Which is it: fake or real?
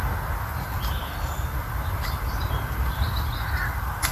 real